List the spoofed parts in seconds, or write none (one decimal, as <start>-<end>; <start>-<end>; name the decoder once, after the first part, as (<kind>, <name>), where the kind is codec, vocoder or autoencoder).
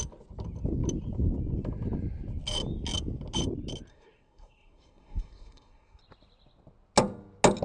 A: 3.9-6.0 (codec, SNAC)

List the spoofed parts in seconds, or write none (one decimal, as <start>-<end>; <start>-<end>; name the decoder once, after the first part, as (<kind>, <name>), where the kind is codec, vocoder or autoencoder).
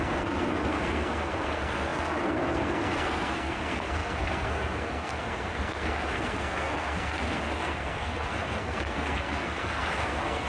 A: 0.0-10.5 (codec, SNAC)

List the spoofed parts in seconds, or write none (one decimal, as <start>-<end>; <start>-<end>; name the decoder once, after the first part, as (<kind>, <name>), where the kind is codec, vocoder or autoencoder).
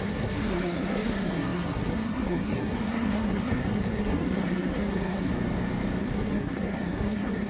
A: 0.0-5.3 (codec, SNAC); 6.0-7.5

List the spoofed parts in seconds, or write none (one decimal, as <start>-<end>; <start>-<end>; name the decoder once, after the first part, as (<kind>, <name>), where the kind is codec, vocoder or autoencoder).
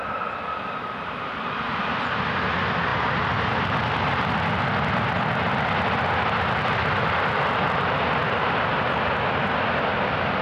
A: none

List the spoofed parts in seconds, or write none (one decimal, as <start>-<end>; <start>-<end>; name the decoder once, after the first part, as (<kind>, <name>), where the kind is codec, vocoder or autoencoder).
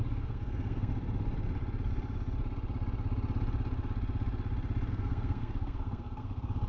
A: 0.0-0.9 (codec, SNAC); 4.9-6.7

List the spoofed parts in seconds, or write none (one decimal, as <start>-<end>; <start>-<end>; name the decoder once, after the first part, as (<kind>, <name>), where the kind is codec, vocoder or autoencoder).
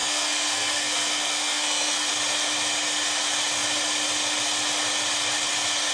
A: 0.0-2.1 (codec, SNAC)